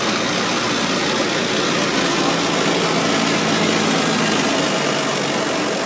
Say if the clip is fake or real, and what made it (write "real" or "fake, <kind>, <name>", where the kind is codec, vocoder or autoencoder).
real